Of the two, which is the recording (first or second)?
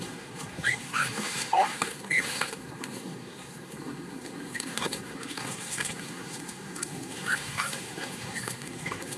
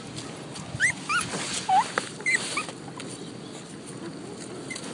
second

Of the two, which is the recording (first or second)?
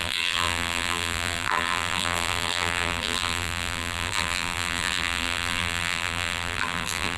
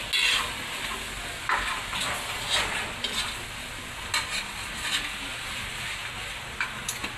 second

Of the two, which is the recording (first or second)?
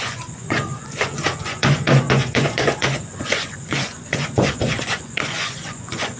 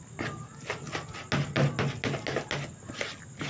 second